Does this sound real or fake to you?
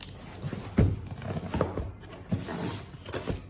real